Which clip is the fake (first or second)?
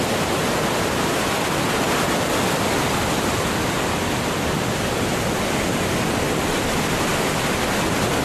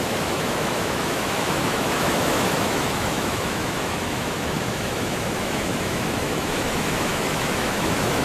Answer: second